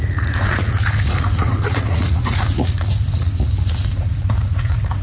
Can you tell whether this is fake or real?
fake